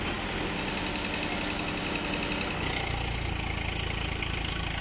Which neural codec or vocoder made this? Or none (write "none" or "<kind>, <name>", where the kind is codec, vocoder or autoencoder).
none